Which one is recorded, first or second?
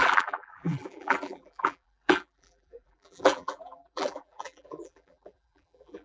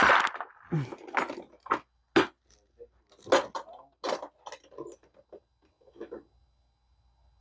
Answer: second